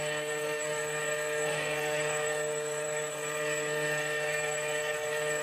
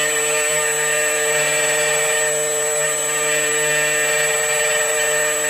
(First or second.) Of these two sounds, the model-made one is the first